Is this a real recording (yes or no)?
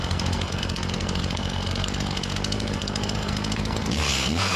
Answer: no